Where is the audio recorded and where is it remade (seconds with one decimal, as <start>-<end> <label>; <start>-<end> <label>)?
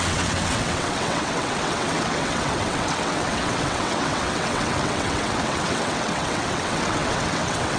0.0-7.8 remade